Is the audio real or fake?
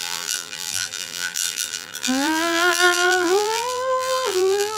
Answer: fake